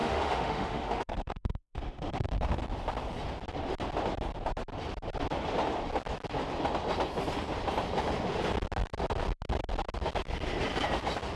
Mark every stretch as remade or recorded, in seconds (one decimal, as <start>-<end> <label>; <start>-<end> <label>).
0.0-2.6 remade; 2.6-11.4 recorded